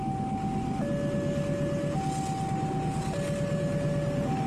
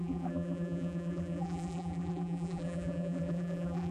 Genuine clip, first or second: first